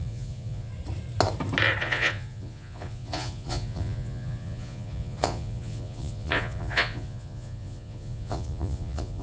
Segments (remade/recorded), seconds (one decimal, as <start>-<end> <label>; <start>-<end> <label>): 0.0-0.7 remade; 0.7-1.8 recorded; 1.8-9.2 remade

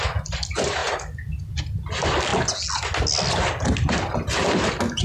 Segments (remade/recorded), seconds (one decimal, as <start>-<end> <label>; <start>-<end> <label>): 0.0-5.0 recorded

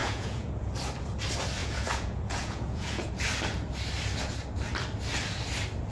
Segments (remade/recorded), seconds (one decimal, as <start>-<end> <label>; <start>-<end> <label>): 0.0-0.7 remade; 0.7-1.6 recorded; 1.6-3.1 remade; 3.1-5.9 recorded

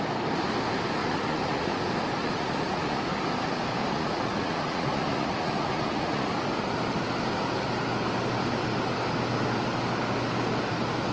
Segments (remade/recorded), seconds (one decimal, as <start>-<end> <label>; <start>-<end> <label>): 0.0-1.0 recorded; 1.0-1.8 remade; 1.8-2.2 recorded; 2.2-3.0 remade; 3.0-3.8 recorded; 3.8-6.3 remade; 6.3-11.1 recorded

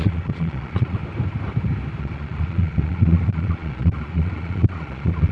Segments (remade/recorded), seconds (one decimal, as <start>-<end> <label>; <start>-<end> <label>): 0.0-1.0 remade; 1.0-2.0 recorded; 2.0-5.3 remade

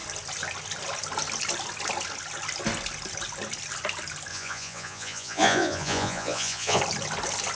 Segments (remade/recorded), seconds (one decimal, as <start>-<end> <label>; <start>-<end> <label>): 0.0-4.3 recorded; 4.3-6.8 remade; 6.8-7.6 recorded